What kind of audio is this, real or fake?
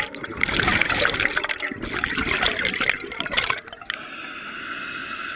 real